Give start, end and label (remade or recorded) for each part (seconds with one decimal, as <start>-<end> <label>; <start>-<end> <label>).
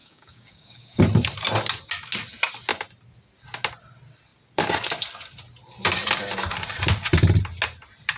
0.0-1.0 remade; 1.0-8.2 recorded